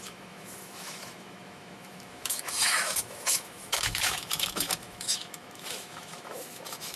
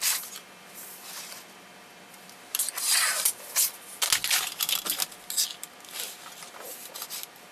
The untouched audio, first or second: second